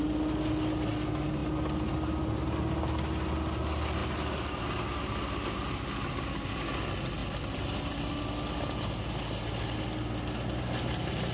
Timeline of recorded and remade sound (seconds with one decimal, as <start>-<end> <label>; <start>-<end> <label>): 0.0-7.2 recorded; 7.2-8.2 remade; 8.2-11.3 recorded